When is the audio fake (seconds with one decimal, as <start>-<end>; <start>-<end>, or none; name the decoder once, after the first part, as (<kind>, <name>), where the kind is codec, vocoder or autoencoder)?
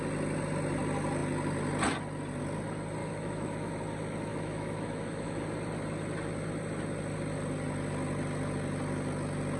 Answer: 3.0-3.7 (autoencoder, DAC-VAE); 4.3-5.4